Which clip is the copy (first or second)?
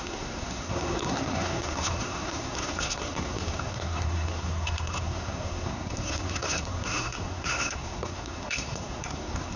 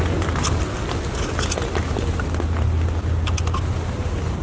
first